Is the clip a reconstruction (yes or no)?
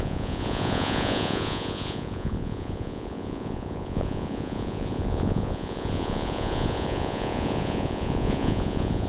yes